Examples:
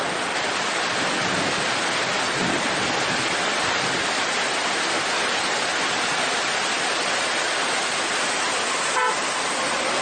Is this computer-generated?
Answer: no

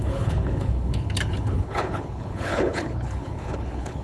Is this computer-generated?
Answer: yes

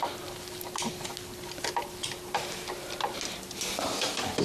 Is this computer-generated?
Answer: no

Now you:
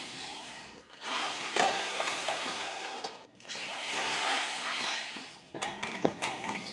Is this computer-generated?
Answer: yes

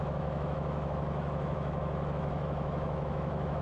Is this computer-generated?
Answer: yes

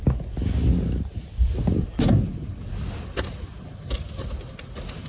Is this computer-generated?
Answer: no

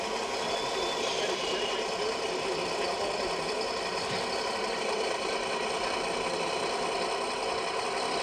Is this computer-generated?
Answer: yes